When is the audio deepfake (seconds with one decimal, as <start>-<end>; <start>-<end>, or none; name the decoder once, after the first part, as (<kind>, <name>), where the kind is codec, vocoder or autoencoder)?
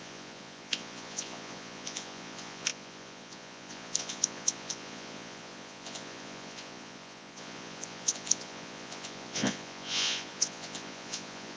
0.0-11.6 (vocoder, Vocos)